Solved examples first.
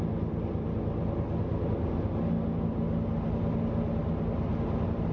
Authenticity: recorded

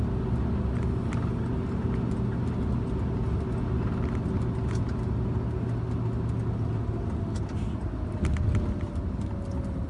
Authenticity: recorded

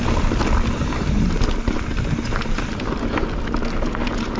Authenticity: recorded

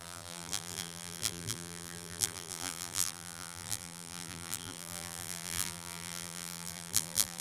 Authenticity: remade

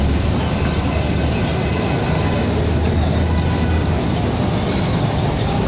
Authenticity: recorded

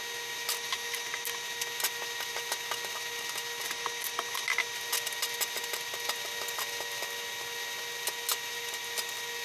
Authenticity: recorded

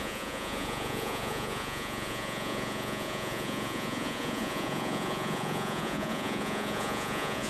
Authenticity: remade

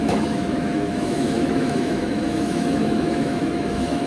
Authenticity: remade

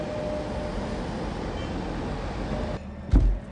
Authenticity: recorded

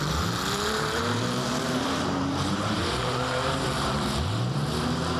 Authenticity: remade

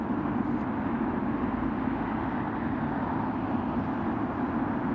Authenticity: recorded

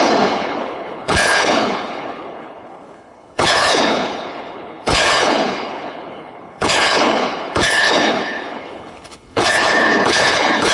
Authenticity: remade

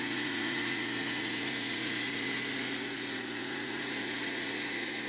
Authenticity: remade